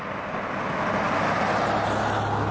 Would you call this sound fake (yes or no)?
no